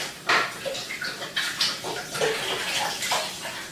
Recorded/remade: recorded